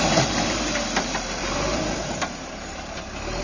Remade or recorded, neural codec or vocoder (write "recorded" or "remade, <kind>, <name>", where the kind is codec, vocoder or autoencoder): remade, vocoder, BigVGAN v2